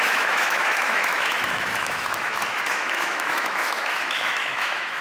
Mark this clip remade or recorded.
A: remade